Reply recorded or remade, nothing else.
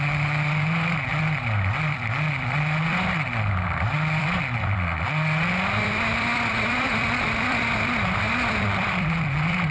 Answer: remade